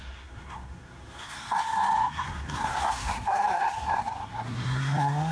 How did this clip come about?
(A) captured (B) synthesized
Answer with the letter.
B